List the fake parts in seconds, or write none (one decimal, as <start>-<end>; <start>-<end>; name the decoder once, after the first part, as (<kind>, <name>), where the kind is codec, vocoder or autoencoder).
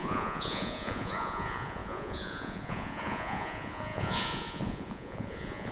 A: 0.0-5.7 (vocoder, Vocos)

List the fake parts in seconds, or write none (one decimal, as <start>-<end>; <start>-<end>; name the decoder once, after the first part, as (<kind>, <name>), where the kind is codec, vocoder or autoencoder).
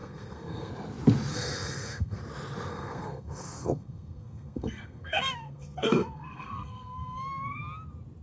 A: 0.0-0.7 (codec, SNAC); 1.3-2.2; 2.7-7.6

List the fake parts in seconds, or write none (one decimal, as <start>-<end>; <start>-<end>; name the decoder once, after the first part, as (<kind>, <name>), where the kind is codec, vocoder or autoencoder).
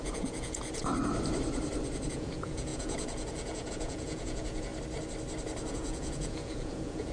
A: 0.0-0.9 (vocoder, Vocos); 2.1-4.7; 5.7-7.1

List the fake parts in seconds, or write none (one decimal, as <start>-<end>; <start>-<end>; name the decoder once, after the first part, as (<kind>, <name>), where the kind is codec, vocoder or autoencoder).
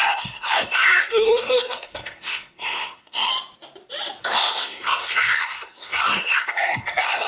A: 0.0-3.3 (codec, SNAC); 4.2-7.3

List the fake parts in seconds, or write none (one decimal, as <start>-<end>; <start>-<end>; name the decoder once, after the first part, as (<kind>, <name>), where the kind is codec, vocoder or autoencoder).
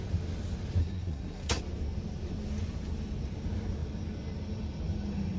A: 0.8-1.6 (codec, SNAC)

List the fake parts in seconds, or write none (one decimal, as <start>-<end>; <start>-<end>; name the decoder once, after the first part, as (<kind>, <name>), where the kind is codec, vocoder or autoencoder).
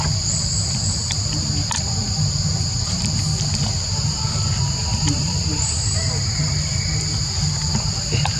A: 2.7-3.8 (vocoder, BigVGAN v2); 4.9-6.1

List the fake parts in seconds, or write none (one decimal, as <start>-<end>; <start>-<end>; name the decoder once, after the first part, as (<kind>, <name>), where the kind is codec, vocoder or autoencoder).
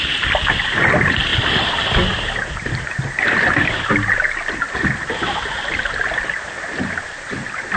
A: 1.3-4.1 (vocoder, BigVGAN v2)